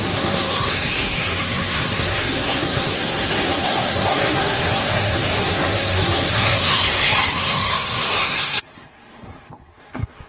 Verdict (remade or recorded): remade